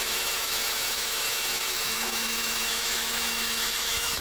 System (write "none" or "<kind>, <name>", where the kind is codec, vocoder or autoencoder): autoencoder, DAC-VAE